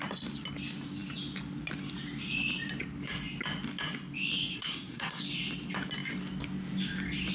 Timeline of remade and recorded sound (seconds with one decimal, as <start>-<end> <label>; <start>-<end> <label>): 0.0-4.5 recorded; 4.5-5.2 remade; 5.2-7.3 recorded